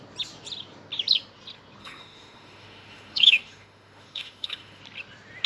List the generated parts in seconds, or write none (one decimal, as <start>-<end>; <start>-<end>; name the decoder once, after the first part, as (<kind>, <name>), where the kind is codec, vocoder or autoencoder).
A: 1.8-4.8 (autoencoder, DAC-VAE)